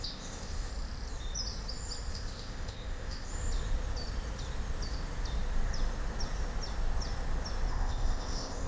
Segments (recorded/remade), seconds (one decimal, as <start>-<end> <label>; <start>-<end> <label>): 0.0-0.7 remade; 0.7-2.1 recorded; 2.1-3.3 remade; 3.3-7.7 recorded; 7.7-8.7 remade